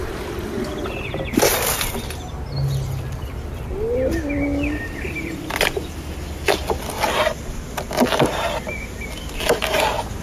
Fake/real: real